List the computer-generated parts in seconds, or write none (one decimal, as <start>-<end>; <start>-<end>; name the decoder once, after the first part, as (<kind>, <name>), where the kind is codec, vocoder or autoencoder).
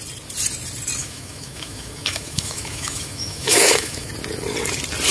1.0-4.1 (autoencoder, DAC-VAE)